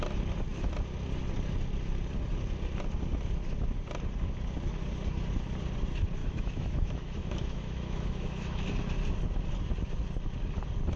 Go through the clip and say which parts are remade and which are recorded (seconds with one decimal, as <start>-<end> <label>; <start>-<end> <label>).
0.0-6.2 recorded; 6.2-8.6 remade; 8.6-11.0 recorded